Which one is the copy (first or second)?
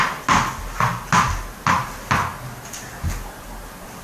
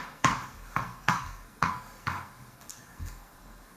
second